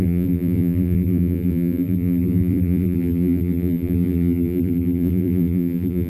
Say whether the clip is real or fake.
fake